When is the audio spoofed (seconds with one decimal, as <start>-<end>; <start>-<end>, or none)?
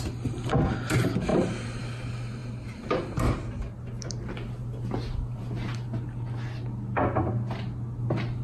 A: 1.3-1.8